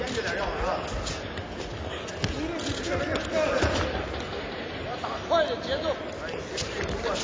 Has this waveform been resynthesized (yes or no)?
no